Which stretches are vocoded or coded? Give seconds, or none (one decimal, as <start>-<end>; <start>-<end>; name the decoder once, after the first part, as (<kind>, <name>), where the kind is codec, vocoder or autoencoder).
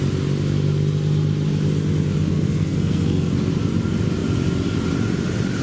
2.3-3.3 (codec, SNAC)